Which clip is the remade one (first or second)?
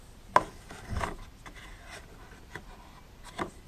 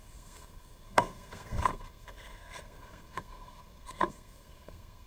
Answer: second